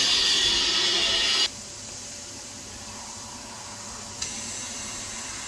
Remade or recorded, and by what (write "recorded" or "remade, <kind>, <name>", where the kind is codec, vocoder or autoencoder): recorded